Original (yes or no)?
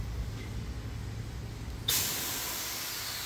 yes